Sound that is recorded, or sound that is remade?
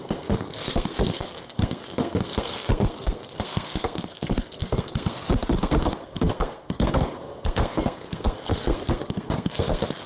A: remade